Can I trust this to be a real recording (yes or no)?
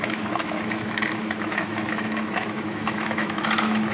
no